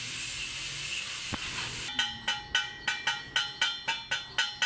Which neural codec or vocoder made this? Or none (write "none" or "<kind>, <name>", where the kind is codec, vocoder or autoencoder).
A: none